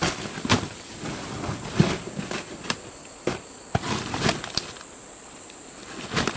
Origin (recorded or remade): recorded